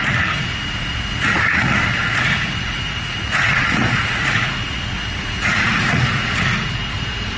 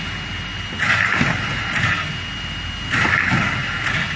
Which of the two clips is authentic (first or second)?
second